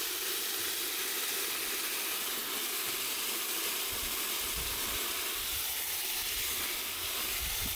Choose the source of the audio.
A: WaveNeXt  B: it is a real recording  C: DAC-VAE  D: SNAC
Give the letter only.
B